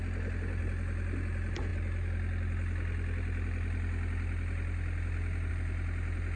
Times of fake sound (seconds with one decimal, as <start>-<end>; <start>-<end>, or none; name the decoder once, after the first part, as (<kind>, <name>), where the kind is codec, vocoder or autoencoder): none